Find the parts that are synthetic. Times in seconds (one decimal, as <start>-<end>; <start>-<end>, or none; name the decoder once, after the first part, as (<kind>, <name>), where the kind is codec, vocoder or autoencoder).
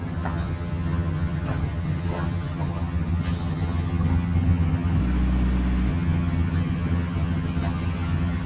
0.0-5.0 (vocoder, HiFi-GAN); 5.9-8.5